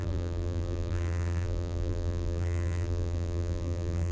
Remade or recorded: remade